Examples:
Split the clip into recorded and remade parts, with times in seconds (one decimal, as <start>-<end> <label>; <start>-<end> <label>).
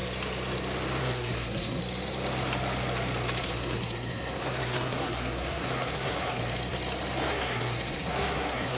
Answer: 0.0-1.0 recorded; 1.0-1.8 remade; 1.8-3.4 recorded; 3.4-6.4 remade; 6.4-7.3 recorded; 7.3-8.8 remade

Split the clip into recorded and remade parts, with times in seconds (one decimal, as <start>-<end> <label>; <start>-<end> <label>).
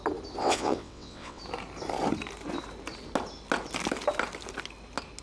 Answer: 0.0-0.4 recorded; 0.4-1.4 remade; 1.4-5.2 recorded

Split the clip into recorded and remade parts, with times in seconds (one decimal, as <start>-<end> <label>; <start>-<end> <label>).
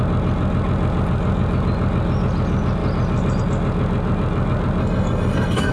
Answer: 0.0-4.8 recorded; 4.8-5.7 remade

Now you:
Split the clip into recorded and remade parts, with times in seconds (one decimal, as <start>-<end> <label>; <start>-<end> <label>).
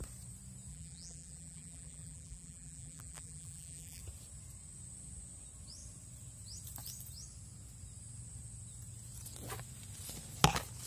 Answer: 0.0-0.7 recorded; 0.7-4.0 remade; 4.0-10.9 recorded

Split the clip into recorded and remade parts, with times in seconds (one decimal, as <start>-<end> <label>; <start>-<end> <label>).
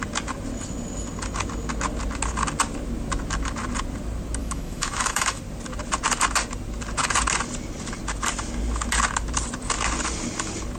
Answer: 0.0-4.4 recorded; 4.4-5.4 remade; 5.4-10.8 recorded